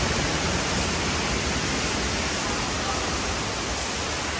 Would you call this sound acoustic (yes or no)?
yes